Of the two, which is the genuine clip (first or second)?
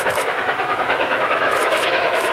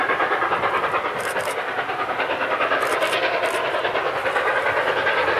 second